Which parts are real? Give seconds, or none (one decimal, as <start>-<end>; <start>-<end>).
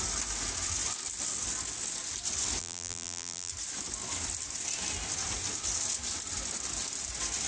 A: 0.0-2.6; 3.5-7.5